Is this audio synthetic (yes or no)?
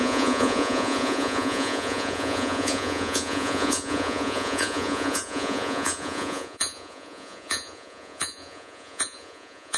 yes